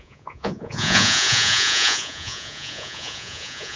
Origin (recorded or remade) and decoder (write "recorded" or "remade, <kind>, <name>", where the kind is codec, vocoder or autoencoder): remade, vocoder, Vocos